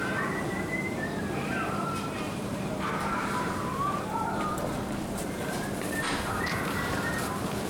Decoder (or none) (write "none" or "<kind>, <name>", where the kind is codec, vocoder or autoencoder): vocoder, BigVGAN v2